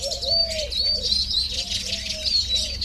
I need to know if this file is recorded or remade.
recorded